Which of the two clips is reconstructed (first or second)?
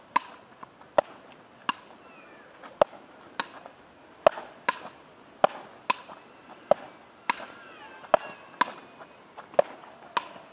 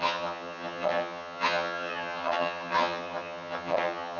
second